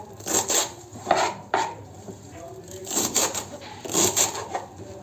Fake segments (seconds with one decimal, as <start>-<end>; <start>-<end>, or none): 0.9-2.4; 2.8-3.9